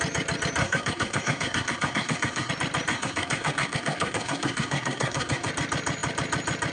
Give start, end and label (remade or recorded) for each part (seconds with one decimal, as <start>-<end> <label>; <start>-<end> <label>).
0.0-0.6 recorded; 0.6-2.5 remade; 2.5-2.9 recorded; 2.9-5.5 remade; 5.5-6.7 recorded